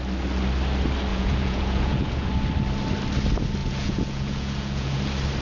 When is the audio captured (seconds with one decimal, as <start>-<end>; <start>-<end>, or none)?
0.0-1.1; 2.3-3.6; 5.0-5.4